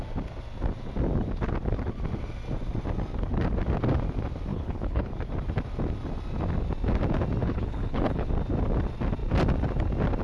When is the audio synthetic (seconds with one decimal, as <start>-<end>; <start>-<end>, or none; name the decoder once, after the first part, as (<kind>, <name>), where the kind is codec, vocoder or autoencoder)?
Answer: 4.5-5.1 (codec, HILCodec); 7.4-8.3